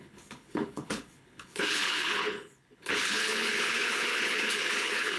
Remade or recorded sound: remade